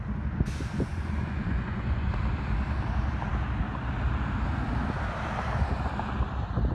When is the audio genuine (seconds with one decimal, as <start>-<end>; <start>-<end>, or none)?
0.0-0.9; 2.1-6.7